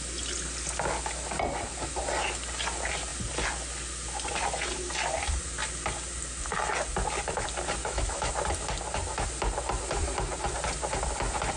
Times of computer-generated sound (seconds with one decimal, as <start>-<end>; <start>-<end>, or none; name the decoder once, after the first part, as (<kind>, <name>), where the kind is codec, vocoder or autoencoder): 7.8-8.3 (autoencoder, DAC-VAE)